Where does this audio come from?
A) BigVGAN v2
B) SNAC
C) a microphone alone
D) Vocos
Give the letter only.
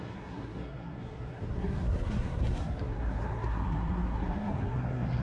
B